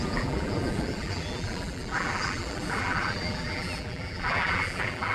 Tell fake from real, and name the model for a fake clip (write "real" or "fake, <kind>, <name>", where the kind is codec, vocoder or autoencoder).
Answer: fake, vocoder, BigVGAN v2